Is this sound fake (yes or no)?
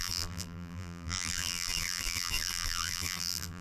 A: yes